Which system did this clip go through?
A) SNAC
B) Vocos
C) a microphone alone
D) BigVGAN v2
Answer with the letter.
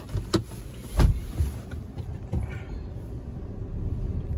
C